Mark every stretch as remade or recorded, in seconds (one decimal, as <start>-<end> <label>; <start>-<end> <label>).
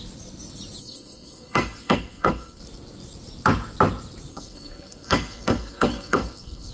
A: 0.0-0.8 recorded; 0.8-2.6 remade; 2.6-4.3 recorded; 4.3-6.7 remade